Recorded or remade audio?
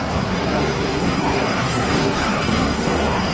remade